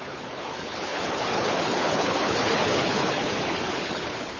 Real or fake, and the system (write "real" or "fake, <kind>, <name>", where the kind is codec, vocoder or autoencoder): fake, codec, HILCodec